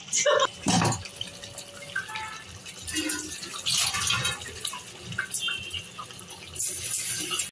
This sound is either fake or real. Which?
real